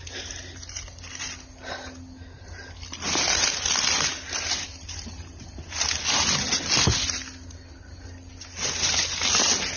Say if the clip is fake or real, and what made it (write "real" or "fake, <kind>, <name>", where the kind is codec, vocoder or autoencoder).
real